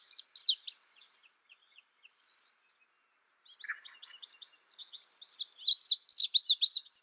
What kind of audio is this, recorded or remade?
recorded